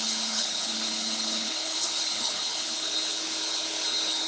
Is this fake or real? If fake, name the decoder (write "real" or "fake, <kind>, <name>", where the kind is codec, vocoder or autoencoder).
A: fake, codec, HILCodec